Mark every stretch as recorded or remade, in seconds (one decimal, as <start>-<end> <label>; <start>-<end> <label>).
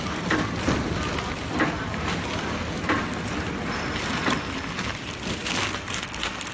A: 0.0-2.6 recorded; 2.6-3.6 remade; 3.6-4.2 recorded; 4.2-5.0 remade; 5.0-5.4 recorded; 5.4-6.0 remade; 6.0-6.5 recorded